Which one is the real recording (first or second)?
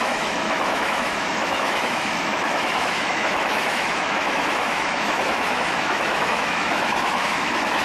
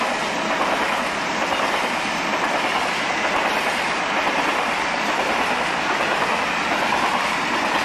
second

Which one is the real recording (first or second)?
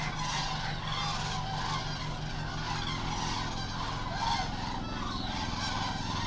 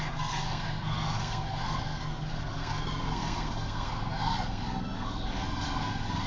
first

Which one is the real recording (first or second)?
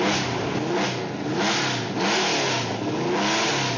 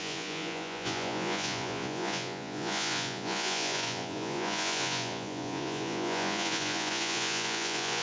first